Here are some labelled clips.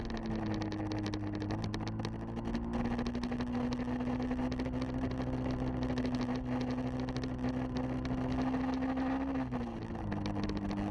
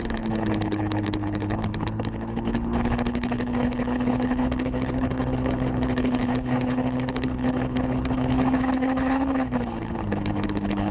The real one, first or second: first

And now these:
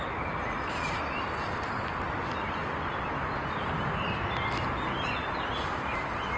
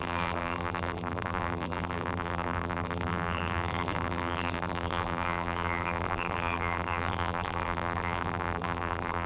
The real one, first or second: first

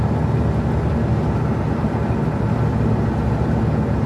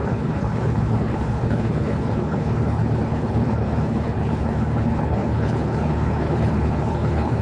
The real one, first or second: first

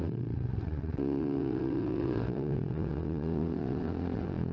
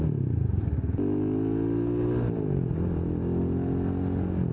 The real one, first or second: second